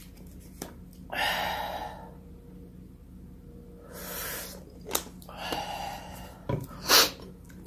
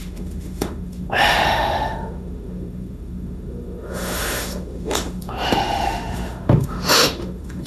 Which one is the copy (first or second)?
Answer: second